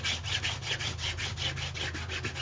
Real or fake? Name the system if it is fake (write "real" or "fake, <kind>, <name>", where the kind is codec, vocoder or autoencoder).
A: real